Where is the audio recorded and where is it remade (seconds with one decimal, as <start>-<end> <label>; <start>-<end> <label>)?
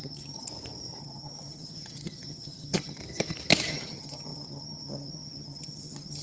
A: 0.0-0.5 remade; 0.5-1.0 recorded; 1.0-3.0 remade; 3.0-3.7 recorded; 3.7-6.2 remade